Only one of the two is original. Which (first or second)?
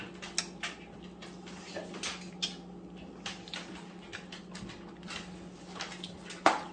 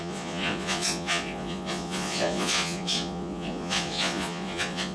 first